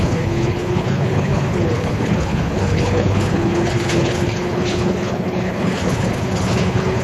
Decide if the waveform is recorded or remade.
remade